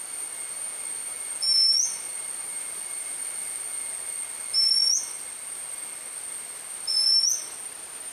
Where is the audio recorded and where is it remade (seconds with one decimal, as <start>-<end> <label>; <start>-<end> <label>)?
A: 0.0-8.1 recorded